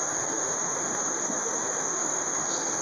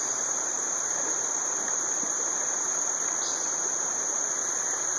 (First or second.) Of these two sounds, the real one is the second